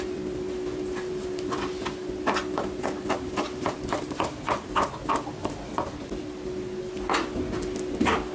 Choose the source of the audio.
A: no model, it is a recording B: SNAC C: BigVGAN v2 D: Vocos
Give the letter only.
A